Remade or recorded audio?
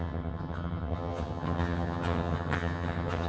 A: remade